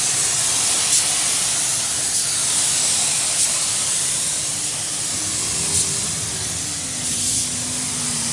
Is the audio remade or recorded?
recorded